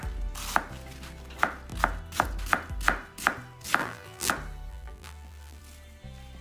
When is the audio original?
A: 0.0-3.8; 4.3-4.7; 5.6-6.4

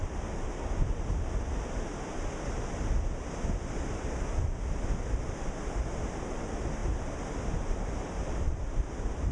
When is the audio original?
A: 0.0-9.3

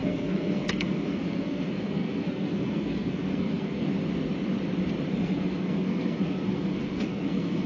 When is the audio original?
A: 3.9-5.1

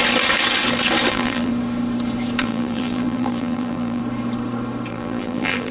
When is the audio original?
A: 0.0-1.1; 1.5-2.4; 4.0-4.9